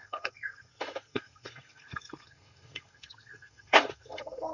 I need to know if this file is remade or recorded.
remade